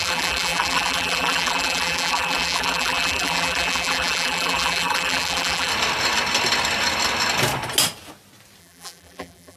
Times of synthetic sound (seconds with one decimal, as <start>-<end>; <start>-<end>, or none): 0.0-5.7; 8.6-9.6